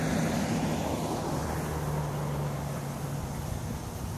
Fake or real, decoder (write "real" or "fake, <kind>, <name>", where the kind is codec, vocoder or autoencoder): real